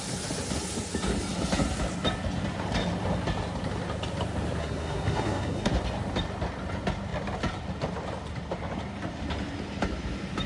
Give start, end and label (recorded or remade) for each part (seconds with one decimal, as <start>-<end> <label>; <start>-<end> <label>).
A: 0.0-4.6 recorded; 4.6-5.7 remade; 5.7-10.5 recorded